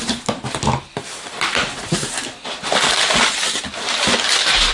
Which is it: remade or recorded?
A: remade